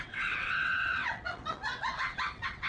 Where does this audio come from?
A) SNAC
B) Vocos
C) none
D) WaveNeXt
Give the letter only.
D